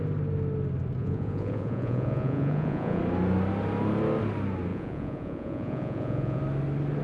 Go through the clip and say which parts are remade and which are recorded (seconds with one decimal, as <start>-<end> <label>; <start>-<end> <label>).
0.0-1.0 recorded; 1.0-3.0 remade; 3.0-4.7 recorded; 4.7-6.4 remade; 6.4-7.0 recorded